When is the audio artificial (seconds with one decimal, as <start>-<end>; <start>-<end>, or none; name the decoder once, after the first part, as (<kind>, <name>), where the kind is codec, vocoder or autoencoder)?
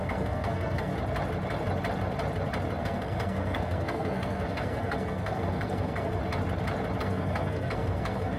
0.0-0.9 (codec, SNAC); 2.8-6.2; 7.0-8.4